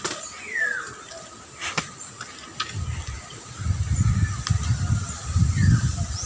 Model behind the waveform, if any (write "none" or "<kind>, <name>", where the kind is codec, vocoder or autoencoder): none